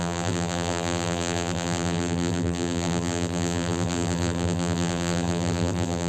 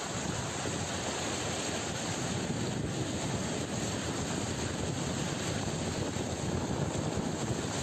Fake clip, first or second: first